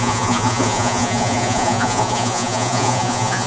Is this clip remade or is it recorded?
remade